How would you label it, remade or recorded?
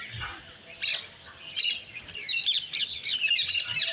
recorded